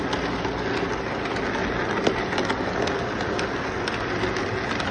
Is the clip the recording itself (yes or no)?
yes